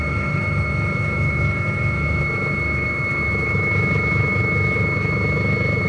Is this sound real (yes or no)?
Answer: no